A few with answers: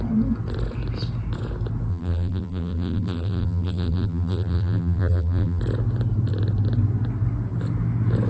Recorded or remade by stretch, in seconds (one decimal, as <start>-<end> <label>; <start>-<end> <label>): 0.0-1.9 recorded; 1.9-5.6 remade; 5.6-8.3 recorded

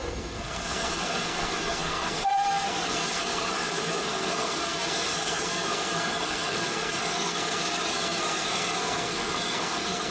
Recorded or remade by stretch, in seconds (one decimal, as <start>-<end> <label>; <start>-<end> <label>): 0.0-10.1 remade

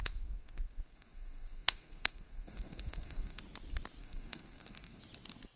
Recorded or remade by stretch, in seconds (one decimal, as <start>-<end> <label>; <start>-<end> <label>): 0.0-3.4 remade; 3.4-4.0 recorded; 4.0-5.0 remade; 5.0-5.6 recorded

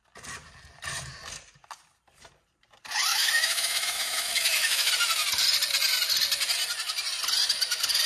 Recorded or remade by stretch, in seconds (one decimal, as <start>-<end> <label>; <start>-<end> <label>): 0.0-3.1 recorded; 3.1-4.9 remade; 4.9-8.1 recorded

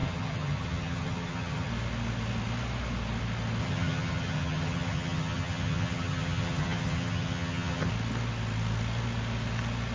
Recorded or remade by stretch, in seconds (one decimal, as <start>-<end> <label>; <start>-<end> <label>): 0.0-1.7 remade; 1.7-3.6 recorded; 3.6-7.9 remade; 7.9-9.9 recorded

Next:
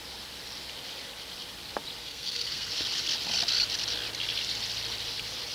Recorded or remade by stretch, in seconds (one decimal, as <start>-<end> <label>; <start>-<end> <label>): 0.0-2.0 recorded; 2.0-2.7 remade; 2.7-5.5 recorded

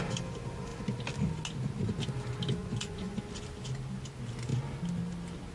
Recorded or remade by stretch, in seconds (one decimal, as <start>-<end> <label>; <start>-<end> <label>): 0.0-2.6 recorded; 2.6-3.2 remade; 3.2-5.5 recorded